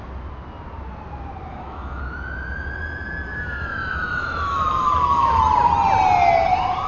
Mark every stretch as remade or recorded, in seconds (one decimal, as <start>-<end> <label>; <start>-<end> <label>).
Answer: 0.0-1.5 recorded; 1.5-2.0 remade; 2.0-3.3 recorded; 3.3-5.4 remade; 5.4-6.9 recorded